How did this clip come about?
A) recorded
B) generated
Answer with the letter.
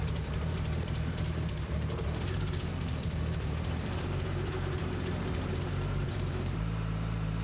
B